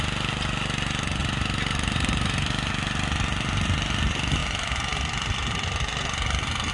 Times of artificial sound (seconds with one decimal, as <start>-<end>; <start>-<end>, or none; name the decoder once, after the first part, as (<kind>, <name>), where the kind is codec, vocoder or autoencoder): 1.2-2.7 (vocoder, BigVGAN v2)